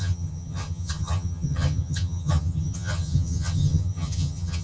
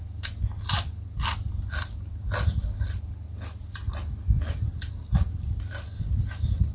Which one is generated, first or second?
first